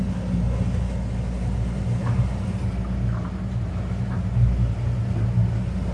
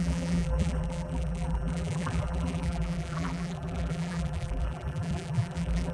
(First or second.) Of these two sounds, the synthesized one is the second